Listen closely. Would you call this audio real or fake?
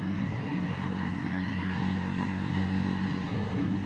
fake